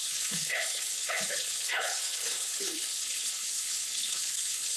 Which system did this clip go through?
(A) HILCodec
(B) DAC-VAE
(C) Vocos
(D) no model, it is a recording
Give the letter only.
A